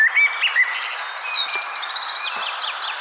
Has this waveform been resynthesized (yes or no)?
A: no